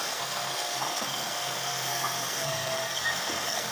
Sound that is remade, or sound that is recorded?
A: remade